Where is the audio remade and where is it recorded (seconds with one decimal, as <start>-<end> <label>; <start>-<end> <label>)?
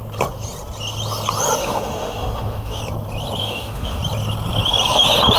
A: 0.0-1.6 recorded; 1.6-2.8 remade; 2.8-3.4 recorded; 3.4-4.0 remade; 4.0-5.4 recorded